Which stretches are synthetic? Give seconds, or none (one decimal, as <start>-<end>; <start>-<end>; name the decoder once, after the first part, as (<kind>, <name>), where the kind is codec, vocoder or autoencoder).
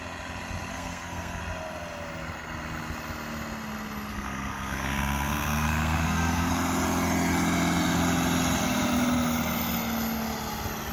0.7-1.4 (codec, SNAC); 4.1-6.5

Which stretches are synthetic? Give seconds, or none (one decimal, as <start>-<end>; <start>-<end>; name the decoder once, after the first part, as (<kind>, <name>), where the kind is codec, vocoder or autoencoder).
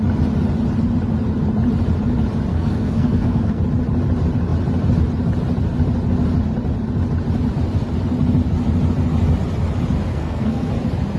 2.5-3.6 (codec, SNAC); 10.1-10.7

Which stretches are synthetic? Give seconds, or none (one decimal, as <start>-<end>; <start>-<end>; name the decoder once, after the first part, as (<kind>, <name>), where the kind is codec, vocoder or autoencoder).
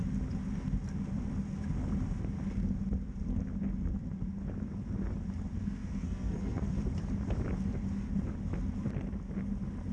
5.6-6.7 (codec, SNAC)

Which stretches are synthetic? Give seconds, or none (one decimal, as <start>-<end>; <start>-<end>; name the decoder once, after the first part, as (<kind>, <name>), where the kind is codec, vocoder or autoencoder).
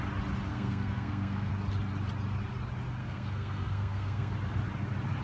0.5-1.5 (codec, SNAC); 3.0-4.3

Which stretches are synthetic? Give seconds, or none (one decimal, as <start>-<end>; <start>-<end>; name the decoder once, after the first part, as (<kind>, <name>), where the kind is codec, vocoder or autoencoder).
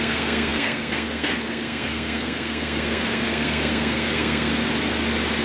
0.0-4.5 (codec, SNAC)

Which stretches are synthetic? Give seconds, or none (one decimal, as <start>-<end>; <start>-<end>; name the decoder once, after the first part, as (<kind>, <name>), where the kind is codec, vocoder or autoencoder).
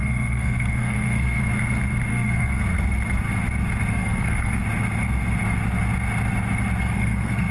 0.0-1.4 (codec, SNAC); 2.1-2.6; 3.9-4.6; 6.8-7.5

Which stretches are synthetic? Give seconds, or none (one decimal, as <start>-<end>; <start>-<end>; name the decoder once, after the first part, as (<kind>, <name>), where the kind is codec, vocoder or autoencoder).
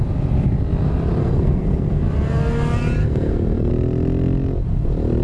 1.2-2.0 (codec, SNAC); 3.0-3.7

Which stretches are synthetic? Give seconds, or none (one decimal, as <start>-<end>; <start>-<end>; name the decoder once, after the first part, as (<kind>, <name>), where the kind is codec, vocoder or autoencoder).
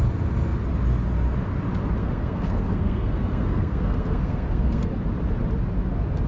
2.0-4.9 (codec, SNAC)